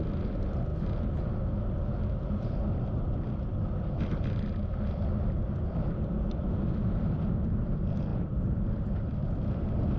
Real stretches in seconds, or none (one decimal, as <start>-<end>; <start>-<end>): 0.7-1.6